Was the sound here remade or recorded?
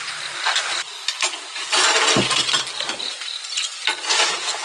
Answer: recorded